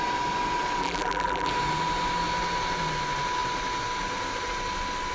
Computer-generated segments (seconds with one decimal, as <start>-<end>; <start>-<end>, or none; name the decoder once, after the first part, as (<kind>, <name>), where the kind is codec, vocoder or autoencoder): 0.8-1.5 (vocoder, BigVGAN v2)